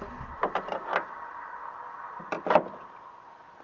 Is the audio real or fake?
real